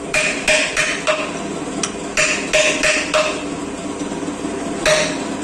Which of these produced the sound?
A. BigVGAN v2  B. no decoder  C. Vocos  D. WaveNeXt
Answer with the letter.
B